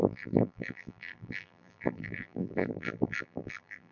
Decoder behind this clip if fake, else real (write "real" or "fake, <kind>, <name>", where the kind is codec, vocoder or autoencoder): fake, vocoder, BigVGAN v2